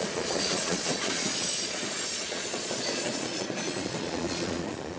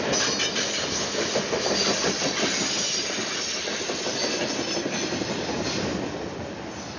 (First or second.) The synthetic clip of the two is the first